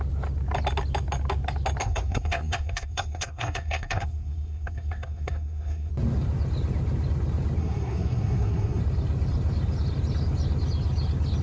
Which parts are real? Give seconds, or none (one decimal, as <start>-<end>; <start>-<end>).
0.0-1.8; 5.9-7.6; 8.8-11.4